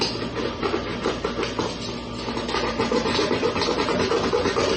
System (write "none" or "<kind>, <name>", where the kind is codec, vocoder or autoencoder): none